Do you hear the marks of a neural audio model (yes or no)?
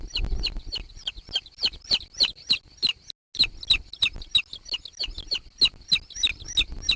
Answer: no